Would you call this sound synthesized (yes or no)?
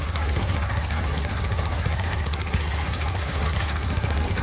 yes